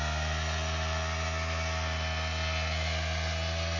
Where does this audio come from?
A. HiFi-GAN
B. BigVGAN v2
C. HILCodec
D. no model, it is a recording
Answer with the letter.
D